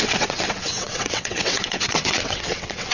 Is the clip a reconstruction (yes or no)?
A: yes